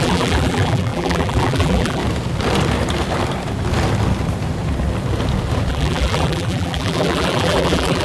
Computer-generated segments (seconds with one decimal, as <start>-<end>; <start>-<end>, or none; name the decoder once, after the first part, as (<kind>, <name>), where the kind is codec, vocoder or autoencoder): 0.0-2.0 (vocoder, BigVGAN v2); 5.7-8.0